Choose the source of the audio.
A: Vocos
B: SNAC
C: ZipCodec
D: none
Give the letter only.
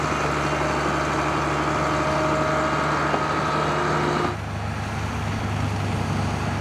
D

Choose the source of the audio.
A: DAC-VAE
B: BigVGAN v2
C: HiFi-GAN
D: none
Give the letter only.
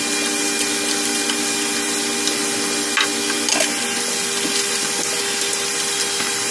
D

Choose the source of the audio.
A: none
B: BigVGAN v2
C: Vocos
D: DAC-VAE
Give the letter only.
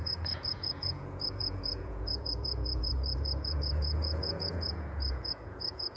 C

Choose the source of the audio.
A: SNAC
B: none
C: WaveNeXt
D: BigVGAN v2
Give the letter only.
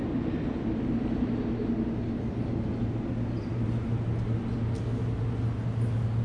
B